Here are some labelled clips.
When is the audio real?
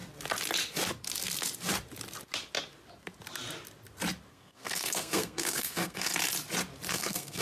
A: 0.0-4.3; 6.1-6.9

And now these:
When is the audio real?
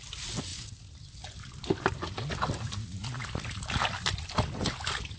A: 0.0-5.2